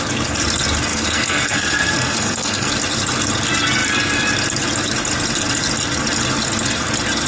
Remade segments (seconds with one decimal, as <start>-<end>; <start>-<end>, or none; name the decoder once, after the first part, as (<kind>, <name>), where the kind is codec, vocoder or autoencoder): 0.9-2.7 (codec, SNAC)